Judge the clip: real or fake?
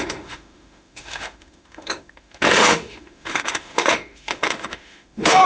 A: fake